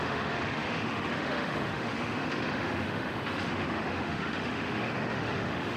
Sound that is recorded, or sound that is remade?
remade